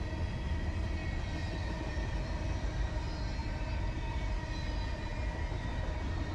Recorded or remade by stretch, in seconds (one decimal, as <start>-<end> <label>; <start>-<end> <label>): 0.0-6.3 recorded